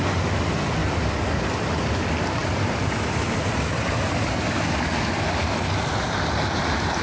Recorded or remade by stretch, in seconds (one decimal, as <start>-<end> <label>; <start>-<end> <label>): 0.0-7.0 recorded